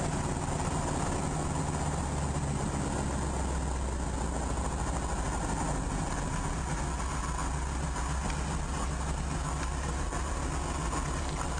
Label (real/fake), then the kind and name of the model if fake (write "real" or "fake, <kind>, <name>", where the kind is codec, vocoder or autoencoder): real